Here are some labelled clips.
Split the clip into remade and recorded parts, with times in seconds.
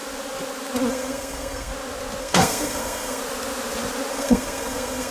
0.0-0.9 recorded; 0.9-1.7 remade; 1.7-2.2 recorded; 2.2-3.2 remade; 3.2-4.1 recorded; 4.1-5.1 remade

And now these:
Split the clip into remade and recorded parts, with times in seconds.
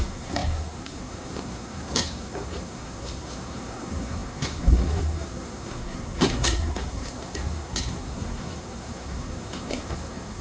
0.0-10.4 remade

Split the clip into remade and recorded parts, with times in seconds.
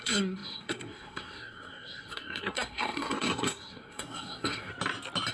0.0-4.7 remade; 4.7-5.3 recorded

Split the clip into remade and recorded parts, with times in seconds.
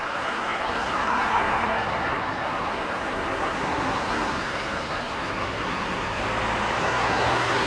0.0-6.2 remade; 6.2-6.8 recorded; 6.8-7.7 remade